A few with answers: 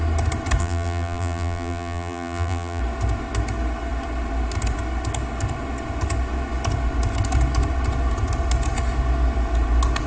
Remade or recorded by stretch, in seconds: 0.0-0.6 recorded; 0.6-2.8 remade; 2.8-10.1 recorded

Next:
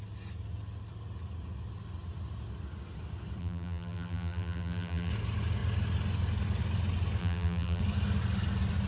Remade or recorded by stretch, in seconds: 0.0-3.4 recorded; 3.4-5.1 remade; 5.1-7.2 recorded; 7.2-7.8 remade; 7.8-8.9 recorded

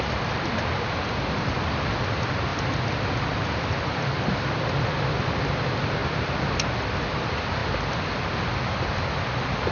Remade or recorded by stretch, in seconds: 0.0-2.5 remade; 2.5-5.3 recorded; 5.3-7.6 remade; 7.6-8.4 recorded; 8.4-9.7 remade